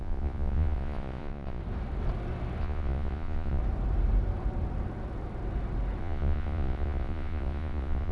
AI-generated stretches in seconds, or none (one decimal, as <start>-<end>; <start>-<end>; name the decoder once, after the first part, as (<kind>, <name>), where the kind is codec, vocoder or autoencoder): 0.0-1.6 (vocoder, Vocos); 2.6-3.6; 6.0-8.1